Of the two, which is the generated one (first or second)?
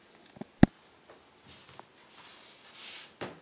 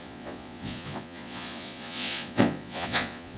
second